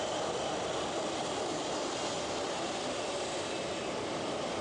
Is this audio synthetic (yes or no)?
no